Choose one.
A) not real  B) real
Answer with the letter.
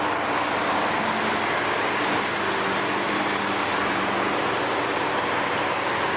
B